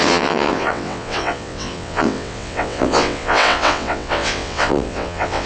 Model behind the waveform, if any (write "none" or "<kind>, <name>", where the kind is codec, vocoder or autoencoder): vocoder, WaveNeXt